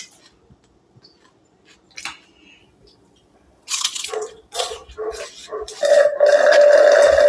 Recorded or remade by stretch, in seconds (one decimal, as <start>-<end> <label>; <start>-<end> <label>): 0.0-2.6 recorded; 2.6-4.9 remade; 4.9-7.3 recorded